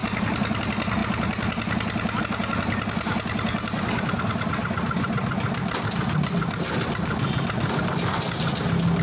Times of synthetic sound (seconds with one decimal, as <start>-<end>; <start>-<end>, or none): none